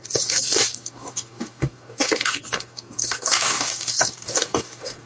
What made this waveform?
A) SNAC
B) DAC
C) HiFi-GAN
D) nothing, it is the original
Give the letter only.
B